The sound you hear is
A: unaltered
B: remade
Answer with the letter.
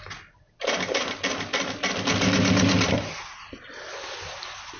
A